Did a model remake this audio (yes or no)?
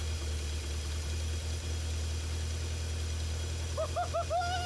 no